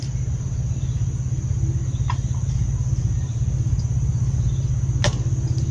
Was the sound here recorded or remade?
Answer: recorded